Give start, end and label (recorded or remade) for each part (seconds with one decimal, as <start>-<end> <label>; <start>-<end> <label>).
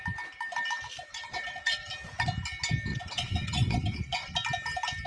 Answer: 0.0-1.1 recorded; 1.1-1.9 remade; 1.9-2.9 recorded; 2.9-4.3 remade; 4.3-5.1 recorded